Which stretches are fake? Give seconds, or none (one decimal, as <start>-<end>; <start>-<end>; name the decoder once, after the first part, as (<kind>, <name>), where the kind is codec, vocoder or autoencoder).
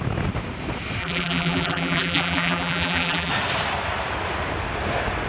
1.0-3.3 (vocoder, BigVGAN v2)